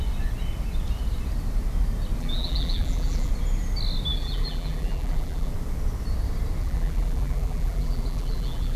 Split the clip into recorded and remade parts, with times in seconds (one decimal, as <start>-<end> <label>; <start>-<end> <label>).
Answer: 0.0-2.2 recorded; 2.2-3.3 remade; 3.3-4.1 recorded; 4.1-5.5 remade; 5.5-6.6 recorded; 6.6-8.8 remade